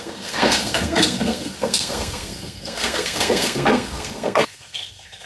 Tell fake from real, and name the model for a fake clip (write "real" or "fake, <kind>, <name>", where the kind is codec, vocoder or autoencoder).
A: fake, codec, SNAC